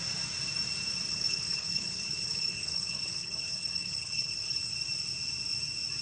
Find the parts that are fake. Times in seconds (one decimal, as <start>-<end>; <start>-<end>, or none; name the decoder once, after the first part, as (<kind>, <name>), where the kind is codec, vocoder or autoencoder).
1.1-4.7 (codec, HILCodec)